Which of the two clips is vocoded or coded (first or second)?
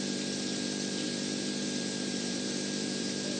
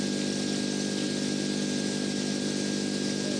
first